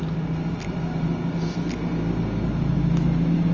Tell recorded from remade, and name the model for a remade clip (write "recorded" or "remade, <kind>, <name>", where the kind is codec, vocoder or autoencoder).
recorded